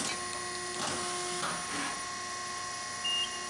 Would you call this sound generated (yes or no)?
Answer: no